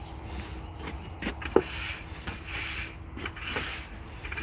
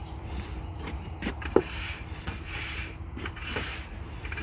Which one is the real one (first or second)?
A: first